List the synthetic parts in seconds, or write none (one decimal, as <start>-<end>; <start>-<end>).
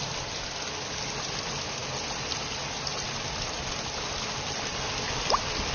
none